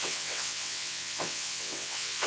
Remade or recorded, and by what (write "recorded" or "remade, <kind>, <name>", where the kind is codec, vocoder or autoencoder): remade, vocoder, WaveNeXt